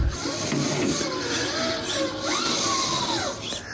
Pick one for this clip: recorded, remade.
recorded